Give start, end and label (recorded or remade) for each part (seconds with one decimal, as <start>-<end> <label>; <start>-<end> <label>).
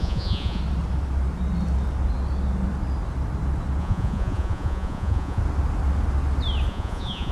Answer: 0.0-0.6 remade; 0.6-3.8 recorded; 3.8-5.4 remade; 5.4-6.7 recorded; 6.7-7.3 remade